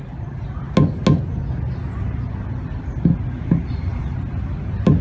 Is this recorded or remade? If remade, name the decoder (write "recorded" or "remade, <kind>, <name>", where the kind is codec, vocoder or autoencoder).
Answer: recorded